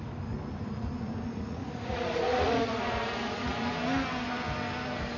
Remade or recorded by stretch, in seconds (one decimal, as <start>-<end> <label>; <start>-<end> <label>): 0.0-1.3 recorded; 1.3-3.7 remade; 3.7-5.2 recorded